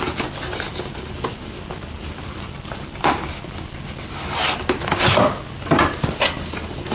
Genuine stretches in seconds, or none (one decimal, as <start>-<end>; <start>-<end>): 0.0-6.9